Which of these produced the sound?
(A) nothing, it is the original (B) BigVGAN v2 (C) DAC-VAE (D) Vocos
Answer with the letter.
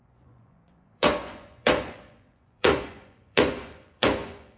D